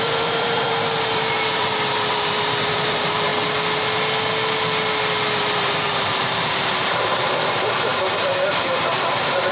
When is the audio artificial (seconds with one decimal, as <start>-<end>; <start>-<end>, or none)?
0.0-3.3; 5.4-9.5